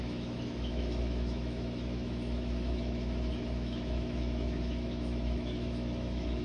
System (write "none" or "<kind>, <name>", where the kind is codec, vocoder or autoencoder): autoencoder, DAC-VAE